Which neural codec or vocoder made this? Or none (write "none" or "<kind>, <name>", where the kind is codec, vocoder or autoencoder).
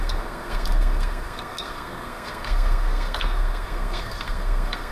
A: codec, SNAC